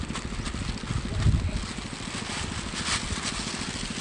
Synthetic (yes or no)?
no